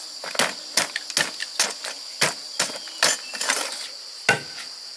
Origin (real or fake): real